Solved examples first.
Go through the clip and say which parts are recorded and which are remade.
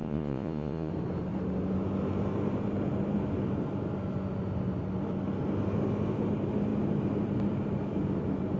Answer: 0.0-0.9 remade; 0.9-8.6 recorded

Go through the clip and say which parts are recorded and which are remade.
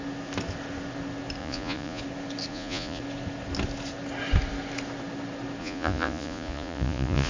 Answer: 0.0-1.4 recorded; 1.4-2.0 remade; 2.0-2.5 recorded; 2.5-3.0 remade; 3.0-5.6 recorded; 5.6-7.3 remade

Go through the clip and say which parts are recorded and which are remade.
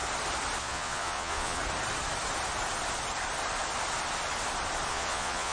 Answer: 0.0-0.6 recorded; 0.6-1.6 remade; 1.6-4.9 recorded; 4.9-5.5 remade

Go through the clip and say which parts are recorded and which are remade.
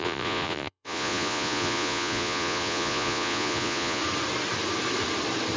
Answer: 0.0-4.0 remade; 4.0-5.6 recorded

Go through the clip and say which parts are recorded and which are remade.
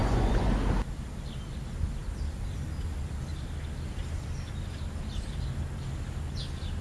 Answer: 0.0-0.5 remade; 0.5-6.8 recorded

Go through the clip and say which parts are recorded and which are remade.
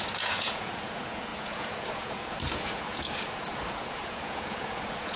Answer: 0.0-5.2 remade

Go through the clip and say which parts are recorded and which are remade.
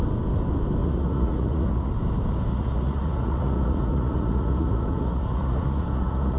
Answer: 0.0-0.8 recorded; 0.8-1.9 remade; 1.9-2.5 recorded; 2.5-6.4 remade